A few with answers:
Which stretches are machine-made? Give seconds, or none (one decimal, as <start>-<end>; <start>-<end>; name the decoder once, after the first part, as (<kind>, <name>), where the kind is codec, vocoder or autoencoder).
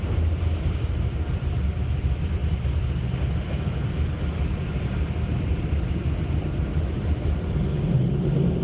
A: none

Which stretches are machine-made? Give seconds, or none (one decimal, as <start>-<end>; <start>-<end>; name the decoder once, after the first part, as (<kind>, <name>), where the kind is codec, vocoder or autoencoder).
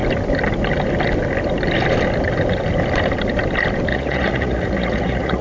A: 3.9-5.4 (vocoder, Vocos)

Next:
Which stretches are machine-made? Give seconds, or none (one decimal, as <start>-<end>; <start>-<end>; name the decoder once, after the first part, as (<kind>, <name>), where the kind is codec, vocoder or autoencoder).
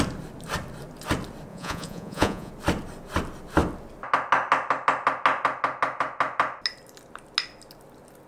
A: 1.5-2.5 (vocoder, Vocos)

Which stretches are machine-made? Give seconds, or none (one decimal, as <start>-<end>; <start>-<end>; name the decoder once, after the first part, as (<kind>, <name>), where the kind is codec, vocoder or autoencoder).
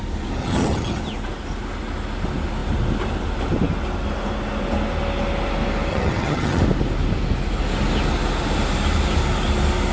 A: 0.4-1.0 (vocoder, HiFi-GAN); 5.9-6.6